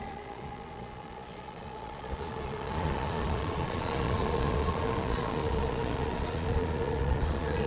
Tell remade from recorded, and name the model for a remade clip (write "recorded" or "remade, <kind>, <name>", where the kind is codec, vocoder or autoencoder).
remade, vocoder, Vocos